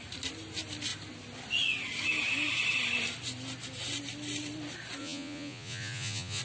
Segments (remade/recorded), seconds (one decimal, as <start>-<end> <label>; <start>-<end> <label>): 0.0-5.0 recorded; 5.0-6.4 remade